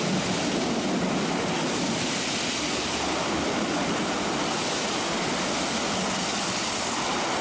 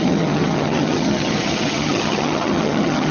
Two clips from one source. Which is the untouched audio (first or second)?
first